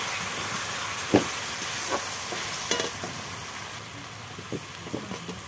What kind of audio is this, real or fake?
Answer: real